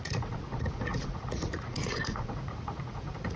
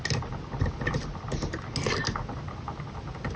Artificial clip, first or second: first